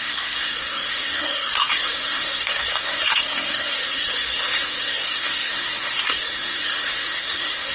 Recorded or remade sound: remade